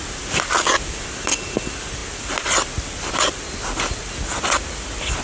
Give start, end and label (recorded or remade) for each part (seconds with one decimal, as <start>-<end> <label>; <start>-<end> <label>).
0.0-5.2 recorded